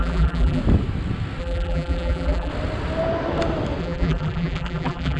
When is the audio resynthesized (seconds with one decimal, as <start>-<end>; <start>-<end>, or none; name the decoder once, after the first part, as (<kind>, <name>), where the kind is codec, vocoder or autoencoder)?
0.0-0.6 (vocoder, BigVGAN v2); 1.4-2.5; 3.8-5.2